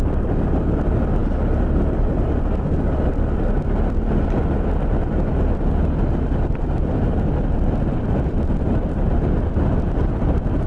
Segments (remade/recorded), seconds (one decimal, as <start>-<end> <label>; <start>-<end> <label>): 0.0-10.7 recorded